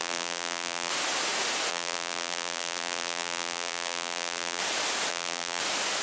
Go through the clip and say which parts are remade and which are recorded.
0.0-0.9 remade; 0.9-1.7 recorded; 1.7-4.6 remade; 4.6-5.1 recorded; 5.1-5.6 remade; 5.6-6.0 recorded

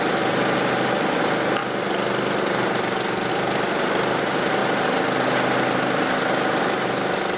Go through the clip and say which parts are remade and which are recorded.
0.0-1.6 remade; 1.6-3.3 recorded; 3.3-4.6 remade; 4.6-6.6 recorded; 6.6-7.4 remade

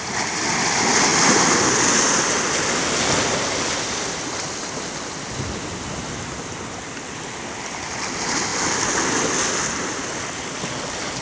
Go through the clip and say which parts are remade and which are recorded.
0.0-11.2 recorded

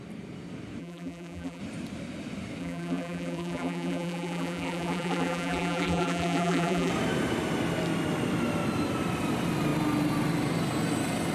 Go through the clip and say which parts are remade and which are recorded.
0.0-0.8 recorded; 0.8-1.6 remade; 1.6-2.6 recorded; 2.6-6.9 remade; 6.9-11.3 recorded